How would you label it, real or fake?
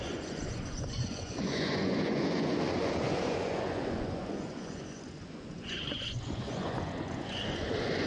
fake